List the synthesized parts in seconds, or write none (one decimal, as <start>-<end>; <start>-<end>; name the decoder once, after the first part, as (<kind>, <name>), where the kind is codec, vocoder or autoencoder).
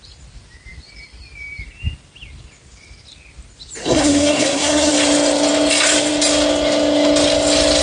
3.8-4.9 (codec, SNAC)